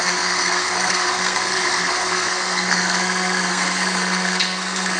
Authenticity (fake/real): fake